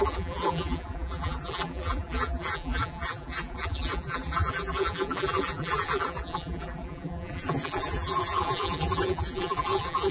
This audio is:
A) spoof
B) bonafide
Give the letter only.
A